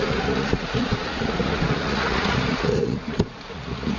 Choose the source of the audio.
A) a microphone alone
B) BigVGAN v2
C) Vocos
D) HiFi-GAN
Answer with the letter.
C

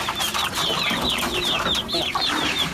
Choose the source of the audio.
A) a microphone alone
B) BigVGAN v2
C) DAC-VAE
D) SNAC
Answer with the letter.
B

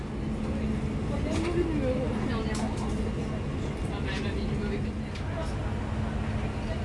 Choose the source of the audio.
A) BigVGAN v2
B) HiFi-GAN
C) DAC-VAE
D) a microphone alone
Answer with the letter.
D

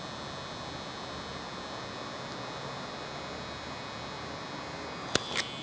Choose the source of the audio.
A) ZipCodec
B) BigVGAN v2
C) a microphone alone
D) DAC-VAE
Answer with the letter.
C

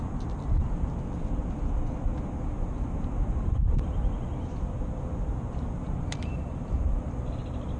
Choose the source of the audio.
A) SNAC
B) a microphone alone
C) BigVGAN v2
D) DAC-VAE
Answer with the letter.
B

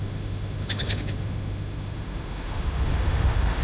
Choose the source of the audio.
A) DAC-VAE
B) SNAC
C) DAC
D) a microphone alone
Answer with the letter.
A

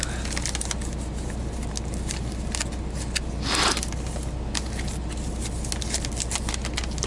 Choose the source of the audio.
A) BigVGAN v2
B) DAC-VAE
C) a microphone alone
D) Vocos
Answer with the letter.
C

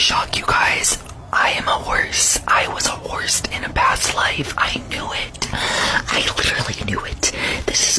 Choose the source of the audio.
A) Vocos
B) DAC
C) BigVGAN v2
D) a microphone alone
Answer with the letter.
D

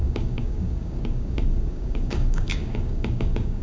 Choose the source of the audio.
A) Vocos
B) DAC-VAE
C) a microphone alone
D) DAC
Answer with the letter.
D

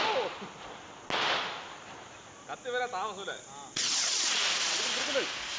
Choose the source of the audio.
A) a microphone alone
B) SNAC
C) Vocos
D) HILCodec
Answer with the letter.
A